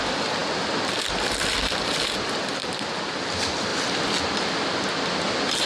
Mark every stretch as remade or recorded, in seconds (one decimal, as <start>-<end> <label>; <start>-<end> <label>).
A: 0.0-5.7 recorded